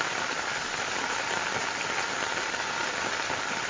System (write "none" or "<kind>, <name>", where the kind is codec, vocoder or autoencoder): none